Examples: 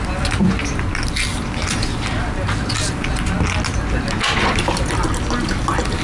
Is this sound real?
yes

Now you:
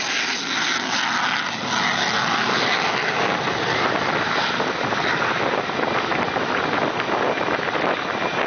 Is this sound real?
yes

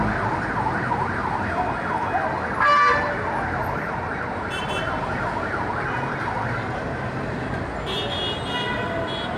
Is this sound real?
yes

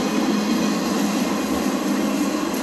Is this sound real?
yes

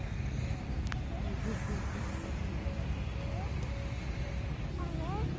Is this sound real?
yes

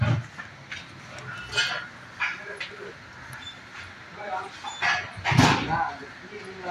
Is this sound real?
yes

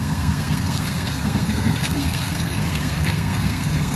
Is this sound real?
no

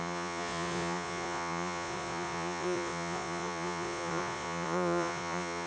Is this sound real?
no